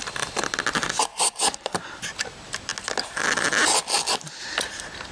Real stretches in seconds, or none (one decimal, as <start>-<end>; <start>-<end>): 0.0-1.1; 2.0-5.1